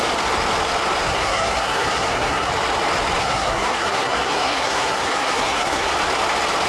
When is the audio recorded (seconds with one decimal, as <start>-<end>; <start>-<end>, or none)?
0.0-1.1; 2.5-3.2; 5.9-6.7